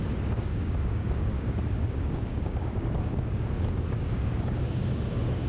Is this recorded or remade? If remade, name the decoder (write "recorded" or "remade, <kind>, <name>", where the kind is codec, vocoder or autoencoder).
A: remade, codec, DAC